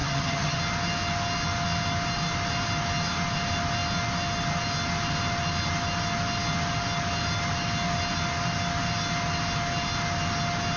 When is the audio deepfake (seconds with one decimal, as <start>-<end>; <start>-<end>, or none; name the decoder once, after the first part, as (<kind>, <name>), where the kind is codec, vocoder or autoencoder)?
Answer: 0.0-0.6 (vocoder, HiFi-GAN)